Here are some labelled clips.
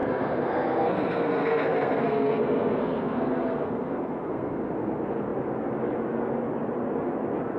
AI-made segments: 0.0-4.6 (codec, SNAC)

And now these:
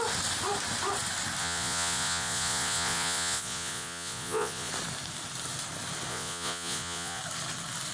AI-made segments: 1.4-4.7 (vocoder, Vocos); 6.1-7.2

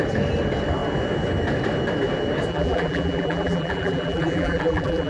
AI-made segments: 2.5-5.1 (vocoder, BigVGAN v2)

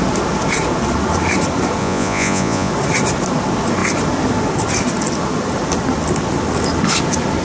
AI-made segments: 1.8-2.7 (vocoder, Vocos)

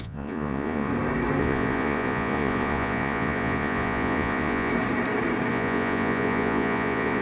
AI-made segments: 0.0-0.9 (vocoder, Vocos); 1.4-4.7; 5.5-7.2

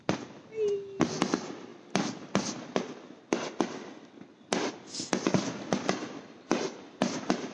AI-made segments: none

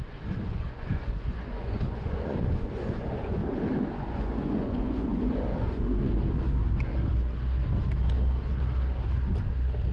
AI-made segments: 0.0-3.4 (vocoder, Vocos); 3.9-6.2

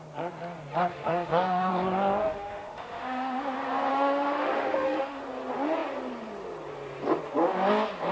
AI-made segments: 0.9-1.7 (autoencoder, DAC-VAE); 2.2-3.4; 3.9-5.2